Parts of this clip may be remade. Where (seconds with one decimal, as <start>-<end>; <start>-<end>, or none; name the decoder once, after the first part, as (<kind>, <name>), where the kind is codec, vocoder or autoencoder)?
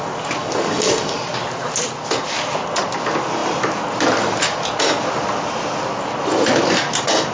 0.4-1.2 (codec, DAC)